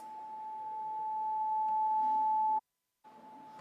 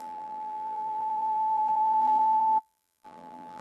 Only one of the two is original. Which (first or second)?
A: first